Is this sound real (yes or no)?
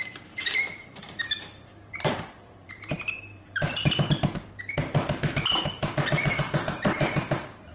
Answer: no